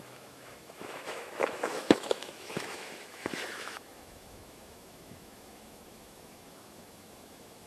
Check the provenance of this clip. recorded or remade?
remade